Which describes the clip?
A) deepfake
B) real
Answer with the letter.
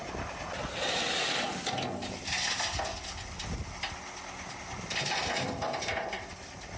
B